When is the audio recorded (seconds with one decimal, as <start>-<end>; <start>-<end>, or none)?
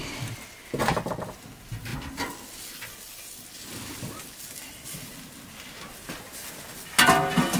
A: 0.0-7.6